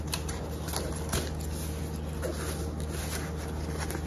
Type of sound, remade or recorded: recorded